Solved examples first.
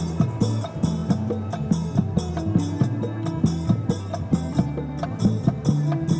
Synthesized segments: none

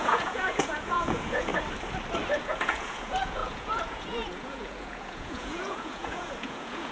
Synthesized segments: 0.0-1.5 (vocoder, Vocos); 2.4-6.9

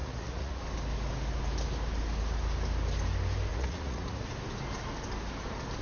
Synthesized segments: 0.0-0.6 (vocoder, Vocos); 3.5-4.3

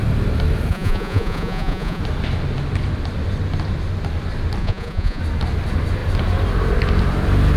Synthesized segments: 0.7-2.0 (vocoder, Vocos); 4.6-5.2

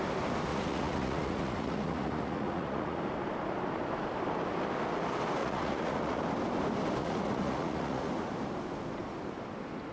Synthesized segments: 0.5-3.0 (vocoder, Vocos); 5.4-6.2; 7.0-8.1